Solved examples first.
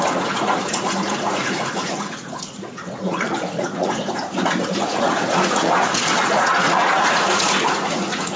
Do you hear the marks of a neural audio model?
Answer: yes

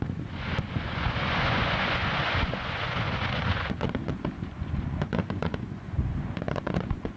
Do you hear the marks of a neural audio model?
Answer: yes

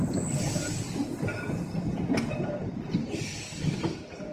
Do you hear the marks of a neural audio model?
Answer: no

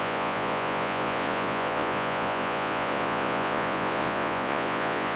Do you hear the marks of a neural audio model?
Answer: yes